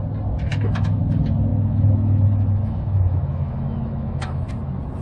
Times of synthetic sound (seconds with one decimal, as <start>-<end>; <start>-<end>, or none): 0.5-1.0; 1.5-4.5